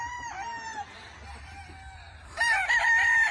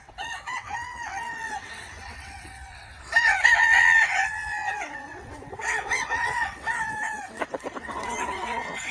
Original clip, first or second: first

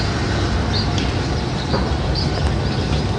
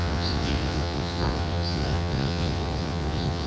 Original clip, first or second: first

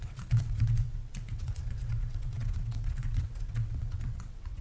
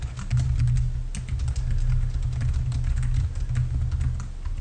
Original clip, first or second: second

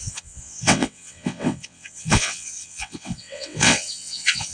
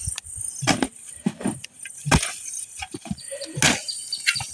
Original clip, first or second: second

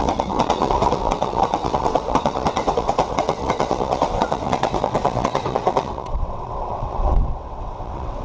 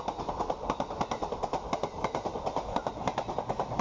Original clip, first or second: second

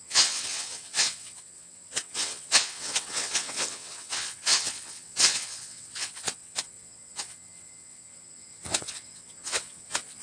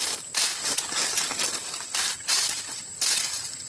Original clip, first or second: second